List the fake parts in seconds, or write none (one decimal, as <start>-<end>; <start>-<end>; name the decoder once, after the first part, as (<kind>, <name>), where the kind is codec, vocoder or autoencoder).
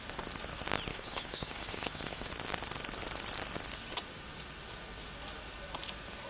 0.9-2.3 (codec, DAC)